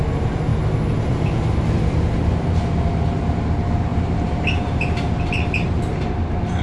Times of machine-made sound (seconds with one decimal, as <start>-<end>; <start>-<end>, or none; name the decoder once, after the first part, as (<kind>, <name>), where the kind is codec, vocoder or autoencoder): 0.0-0.5 (vocoder, BigVGAN v2); 1.0-6.6